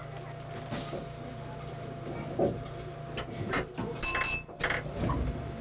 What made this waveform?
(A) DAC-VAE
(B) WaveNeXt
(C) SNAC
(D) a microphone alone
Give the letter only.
D